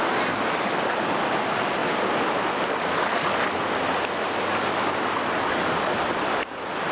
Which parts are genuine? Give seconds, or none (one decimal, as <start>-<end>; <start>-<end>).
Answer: 0.0-6.9